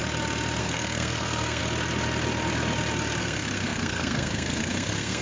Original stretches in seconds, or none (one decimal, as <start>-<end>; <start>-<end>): 0.0-0.6; 1.6-3.2